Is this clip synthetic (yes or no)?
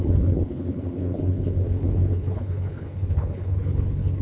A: yes